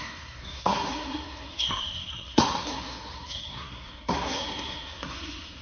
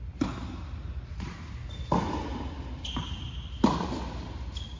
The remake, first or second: first